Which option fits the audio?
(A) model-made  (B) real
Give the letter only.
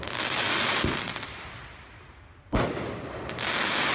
B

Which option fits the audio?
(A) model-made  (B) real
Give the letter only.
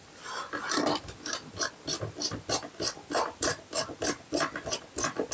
B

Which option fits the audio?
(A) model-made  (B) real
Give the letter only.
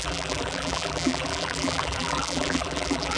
A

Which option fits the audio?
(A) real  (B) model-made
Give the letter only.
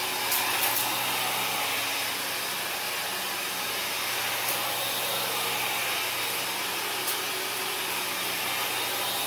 A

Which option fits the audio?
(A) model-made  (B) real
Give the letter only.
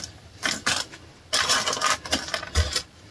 B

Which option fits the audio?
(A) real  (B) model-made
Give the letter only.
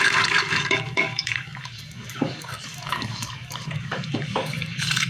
B